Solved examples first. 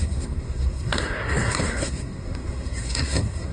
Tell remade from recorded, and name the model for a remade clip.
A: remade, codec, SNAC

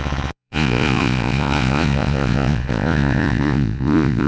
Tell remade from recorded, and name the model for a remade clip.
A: remade, vocoder, Vocos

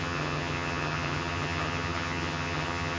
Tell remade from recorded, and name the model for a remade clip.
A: remade, vocoder, HiFi-GAN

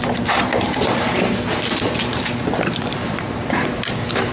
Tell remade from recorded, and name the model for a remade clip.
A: remade, vocoder, BigVGAN v2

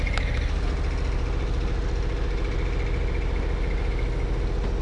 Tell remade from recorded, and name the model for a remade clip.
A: recorded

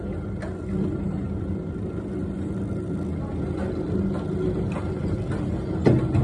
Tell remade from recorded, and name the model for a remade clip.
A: recorded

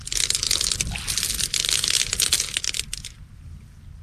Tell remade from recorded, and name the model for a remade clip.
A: recorded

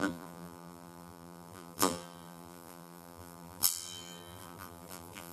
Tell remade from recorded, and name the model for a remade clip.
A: remade, vocoder, BigVGAN v2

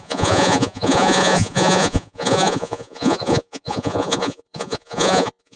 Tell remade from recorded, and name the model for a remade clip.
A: remade, vocoder, Vocos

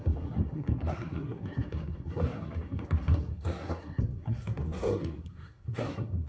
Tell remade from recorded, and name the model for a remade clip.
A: remade, codec, SNAC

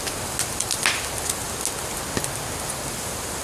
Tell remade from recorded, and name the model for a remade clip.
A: recorded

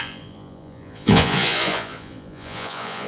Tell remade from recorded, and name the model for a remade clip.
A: remade, vocoder, Vocos